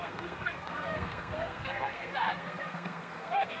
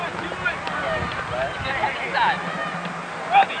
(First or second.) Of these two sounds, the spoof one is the first